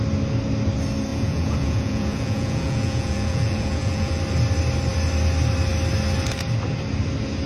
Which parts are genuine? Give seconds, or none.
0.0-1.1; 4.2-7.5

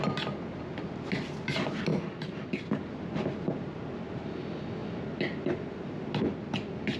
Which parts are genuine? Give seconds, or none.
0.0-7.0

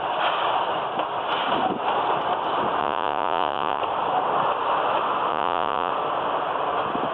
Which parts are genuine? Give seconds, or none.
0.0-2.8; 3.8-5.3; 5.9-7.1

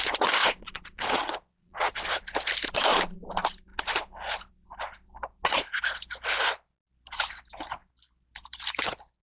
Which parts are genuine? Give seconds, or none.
0.0-0.4; 2.3-9.2

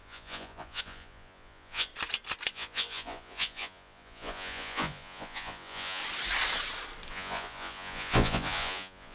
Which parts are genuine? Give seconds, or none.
1.9-2.5; 6.0-7.1

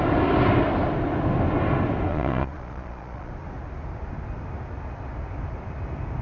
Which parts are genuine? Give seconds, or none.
0.0-2.1; 3.3-6.2

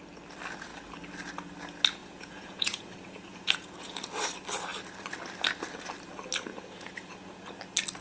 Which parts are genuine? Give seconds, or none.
0.0-2.0; 4.0-6.5; 7.5-8.0